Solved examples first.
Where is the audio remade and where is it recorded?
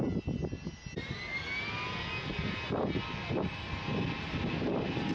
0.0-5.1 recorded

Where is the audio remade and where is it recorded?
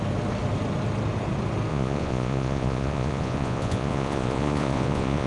0.0-1.7 recorded; 1.7-5.3 remade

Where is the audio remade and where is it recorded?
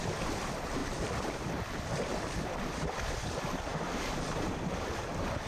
0.0-3.7 remade; 3.7-5.5 recorded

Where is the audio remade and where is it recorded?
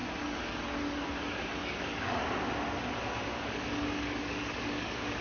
0.0-1.6 recorded; 1.6-2.4 remade; 2.4-3.3 recorded; 3.3-5.2 remade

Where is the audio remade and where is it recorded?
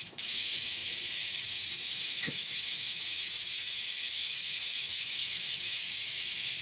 0.0-6.6 remade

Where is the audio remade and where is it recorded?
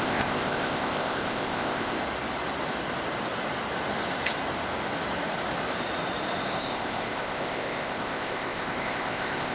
0.0-2.0 remade; 2.0-6.6 recorded; 6.6-9.5 remade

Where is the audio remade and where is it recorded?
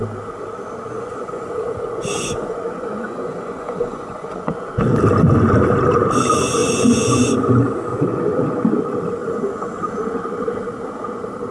0.0-0.9 recorded; 0.9-4.7 remade; 4.7-6.6 recorded; 6.6-7.3 remade; 7.3-7.9 recorded; 7.9-8.7 remade; 8.7-9.2 recorded; 9.2-9.7 remade; 9.7-11.5 recorded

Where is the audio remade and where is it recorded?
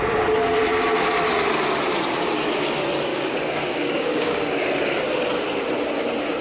0.0-3.1 recorded; 3.1-4.7 remade; 4.7-6.4 recorded